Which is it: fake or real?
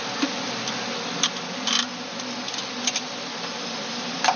real